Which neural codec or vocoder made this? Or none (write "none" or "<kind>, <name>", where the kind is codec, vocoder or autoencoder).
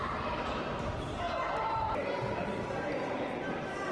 vocoder, BigVGAN v2